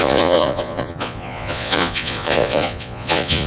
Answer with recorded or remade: remade